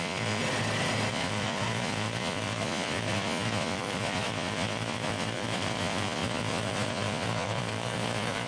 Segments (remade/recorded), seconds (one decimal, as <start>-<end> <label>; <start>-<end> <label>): 0.0-0.4 remade; 0.4-1.1 recorded; 1.1-8.5 remade